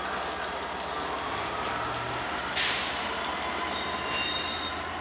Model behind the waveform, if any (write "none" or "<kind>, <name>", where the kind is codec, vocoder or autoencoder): none